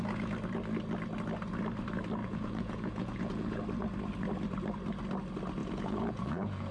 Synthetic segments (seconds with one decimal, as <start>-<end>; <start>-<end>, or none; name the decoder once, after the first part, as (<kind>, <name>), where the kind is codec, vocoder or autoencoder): 2.2-3.6 (vocoder, Vocos); 5.6-6.7

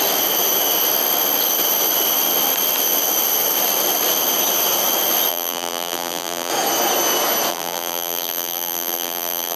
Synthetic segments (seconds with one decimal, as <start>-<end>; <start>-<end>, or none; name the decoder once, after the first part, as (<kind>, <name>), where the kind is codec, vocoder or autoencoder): 5.3-6.5 (vocoder, BigVGAN v2); 7.5-9.6

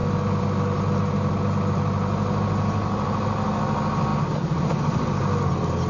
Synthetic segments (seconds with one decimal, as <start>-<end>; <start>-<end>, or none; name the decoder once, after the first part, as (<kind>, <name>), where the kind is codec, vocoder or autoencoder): none

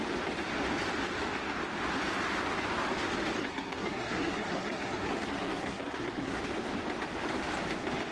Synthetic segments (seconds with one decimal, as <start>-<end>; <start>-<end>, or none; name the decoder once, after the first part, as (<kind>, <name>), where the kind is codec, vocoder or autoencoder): 3.4-6.4 (codec, SNAC)